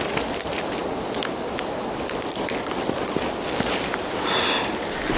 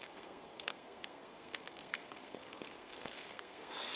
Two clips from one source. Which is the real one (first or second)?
first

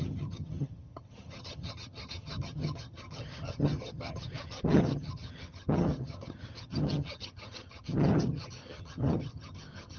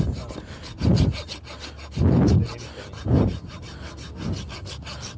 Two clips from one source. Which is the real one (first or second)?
second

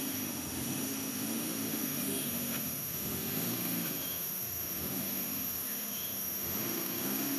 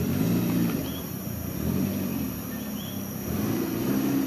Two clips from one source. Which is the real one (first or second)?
second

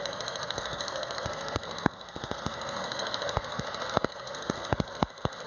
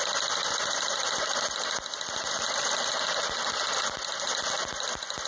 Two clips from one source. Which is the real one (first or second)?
second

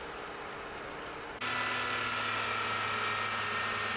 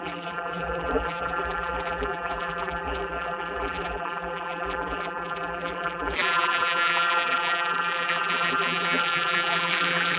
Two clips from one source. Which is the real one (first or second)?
first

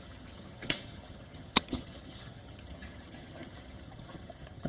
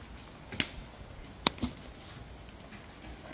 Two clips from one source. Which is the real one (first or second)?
second